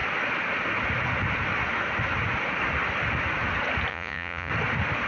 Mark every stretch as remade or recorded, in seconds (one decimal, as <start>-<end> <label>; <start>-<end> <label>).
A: 0.0-3.9 recorded; 3.9-4.5 remade; 4.5-5.1 recorded